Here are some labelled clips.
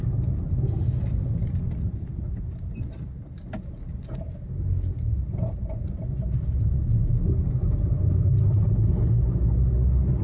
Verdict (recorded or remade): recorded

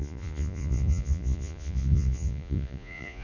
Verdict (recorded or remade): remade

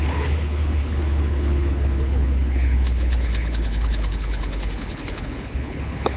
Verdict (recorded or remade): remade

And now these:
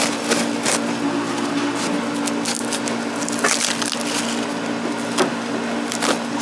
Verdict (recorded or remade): recorded